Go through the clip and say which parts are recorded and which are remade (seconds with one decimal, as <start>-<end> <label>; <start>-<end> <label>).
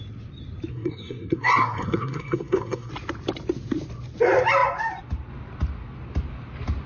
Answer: 0.0-0.7 recorded; 0.7-2.9 remade; 2.9-6.9 recorded